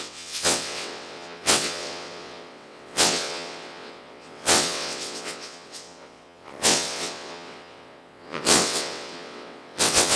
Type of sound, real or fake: fake